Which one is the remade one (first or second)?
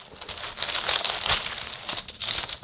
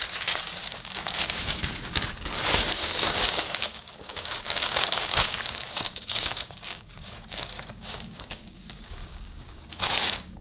second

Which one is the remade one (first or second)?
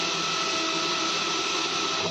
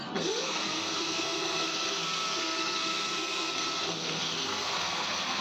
second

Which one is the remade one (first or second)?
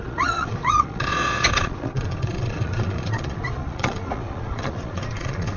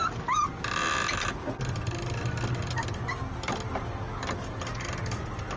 first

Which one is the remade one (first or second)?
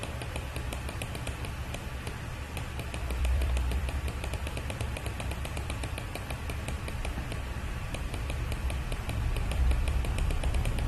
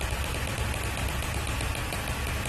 first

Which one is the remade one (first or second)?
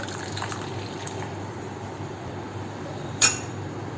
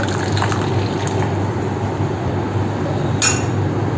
first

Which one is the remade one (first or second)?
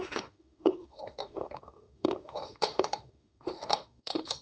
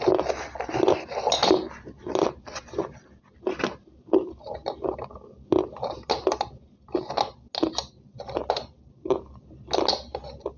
first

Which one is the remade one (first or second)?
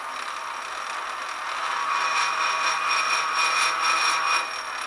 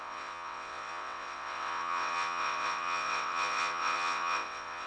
second